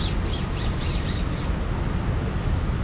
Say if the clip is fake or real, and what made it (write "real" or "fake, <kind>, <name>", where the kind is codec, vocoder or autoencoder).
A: real